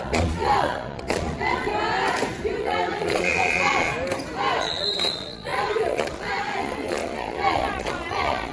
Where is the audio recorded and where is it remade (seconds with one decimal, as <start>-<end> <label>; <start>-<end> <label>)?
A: 0.0-1.7 remade; 1.7-2.6 recorded; 2.6-3.9 remade; 3.9-4.6 recorded; 4.6-8.5 remade